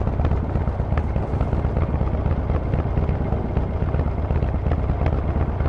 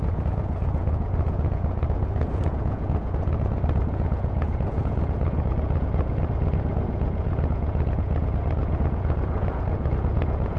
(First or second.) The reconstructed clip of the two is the second